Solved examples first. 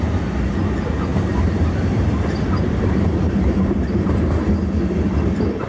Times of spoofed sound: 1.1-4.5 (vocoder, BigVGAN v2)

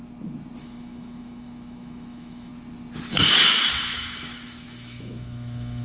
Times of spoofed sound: 0.6-2.5 (autoencoder, DAC-VAE); 3.1-5.8

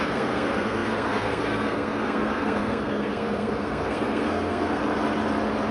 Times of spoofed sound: 0.0-4.8 (codec, SNAC)